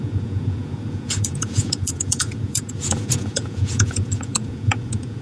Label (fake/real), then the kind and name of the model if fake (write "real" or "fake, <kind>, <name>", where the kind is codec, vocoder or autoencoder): fake, vocoder, Vocos